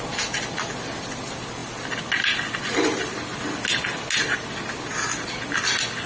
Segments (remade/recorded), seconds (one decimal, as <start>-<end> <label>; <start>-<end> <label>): 0.0-6.1 recorded